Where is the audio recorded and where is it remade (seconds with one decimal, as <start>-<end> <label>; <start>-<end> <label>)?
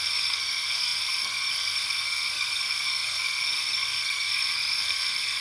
0.0-5.4 remade